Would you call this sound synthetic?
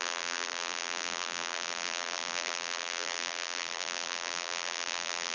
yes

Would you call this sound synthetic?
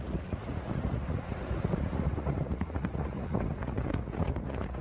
yes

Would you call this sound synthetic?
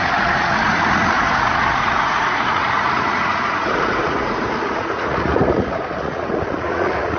yes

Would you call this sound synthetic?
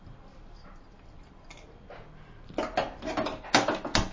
no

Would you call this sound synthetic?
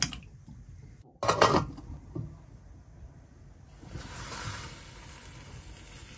no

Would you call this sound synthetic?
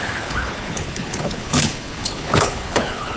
yes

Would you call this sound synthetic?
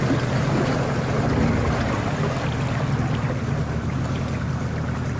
no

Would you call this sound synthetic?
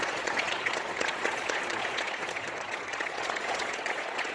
yes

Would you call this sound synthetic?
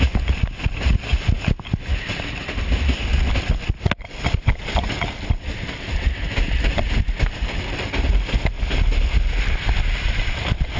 no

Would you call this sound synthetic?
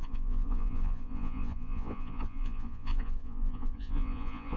yes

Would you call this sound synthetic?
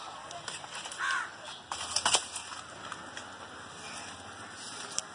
no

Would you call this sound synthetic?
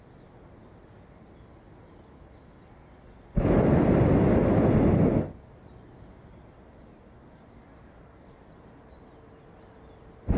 no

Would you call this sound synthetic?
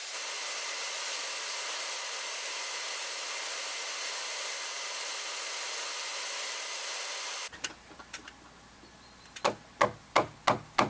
no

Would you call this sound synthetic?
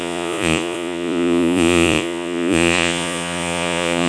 yes